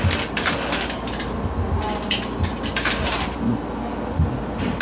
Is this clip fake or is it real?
real